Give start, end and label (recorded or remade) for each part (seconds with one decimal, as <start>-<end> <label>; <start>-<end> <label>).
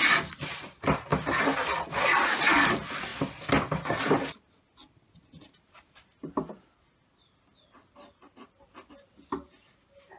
0.0-1.1 recorded; 1.1-1.8 remade; 1.8-3.1 recorded; 3.1-7.4 remade; 7.4-10.2 recorded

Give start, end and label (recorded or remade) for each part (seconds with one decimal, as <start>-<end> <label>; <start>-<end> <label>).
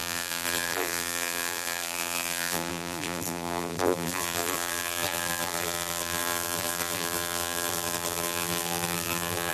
0.0-9.5 remade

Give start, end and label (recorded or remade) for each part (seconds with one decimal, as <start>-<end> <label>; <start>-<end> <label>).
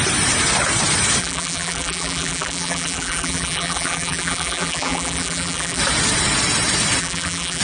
0.0-1.2 recorded; 1.2-5.8 remade; 5.8-7.0 recorded; 7.0-7.6 remade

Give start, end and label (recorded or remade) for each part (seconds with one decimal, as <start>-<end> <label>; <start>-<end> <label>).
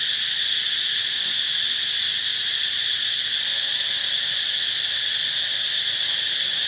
0.0-2.3 recorded; 2.3-3.6 remade; 3.6-6.7 recorded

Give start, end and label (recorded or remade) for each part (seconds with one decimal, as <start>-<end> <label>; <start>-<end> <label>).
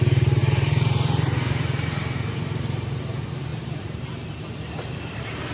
0.0-5.5 remade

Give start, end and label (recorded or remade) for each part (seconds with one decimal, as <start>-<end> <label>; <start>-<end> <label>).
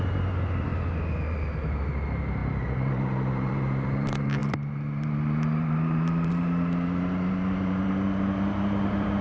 0.0-0.7 remade; 0.7-1.5 recorded; 1.5-9.2 remade